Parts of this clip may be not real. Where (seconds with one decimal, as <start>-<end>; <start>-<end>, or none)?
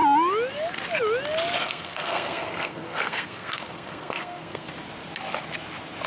1.6-4.7